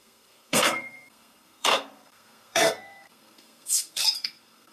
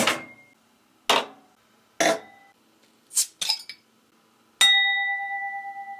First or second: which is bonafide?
second